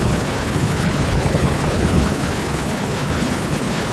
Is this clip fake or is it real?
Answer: fake